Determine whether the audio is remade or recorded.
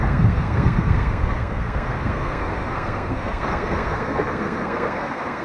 remade